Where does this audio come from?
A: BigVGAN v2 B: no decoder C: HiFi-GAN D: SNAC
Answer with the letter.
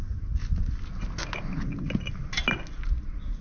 B